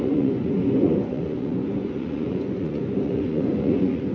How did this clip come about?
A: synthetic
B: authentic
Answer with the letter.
A